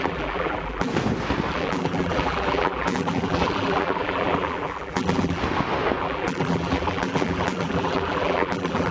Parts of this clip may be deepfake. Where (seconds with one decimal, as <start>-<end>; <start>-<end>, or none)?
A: 0.0-0.9; 1.5-5.4; 6.0-8.9